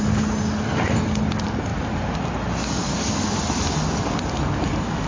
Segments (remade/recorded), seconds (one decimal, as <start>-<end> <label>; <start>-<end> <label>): 0.0-5.1 recorded